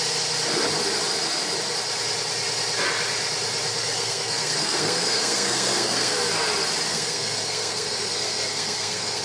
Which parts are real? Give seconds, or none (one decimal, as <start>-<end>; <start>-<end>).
0.0-3.8; 6.1-6.9